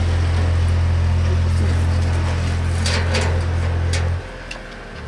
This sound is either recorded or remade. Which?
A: recorded